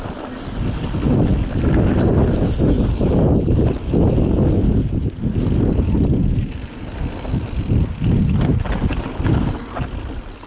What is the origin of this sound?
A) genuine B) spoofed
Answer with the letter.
A